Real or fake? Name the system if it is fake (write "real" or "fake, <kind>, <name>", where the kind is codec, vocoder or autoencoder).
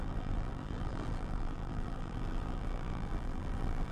fake, vocoder, BigVGAN v2